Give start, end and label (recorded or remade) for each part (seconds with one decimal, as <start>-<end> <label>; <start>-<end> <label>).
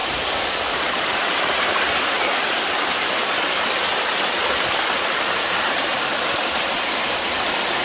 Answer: 0.0-7.8 recorded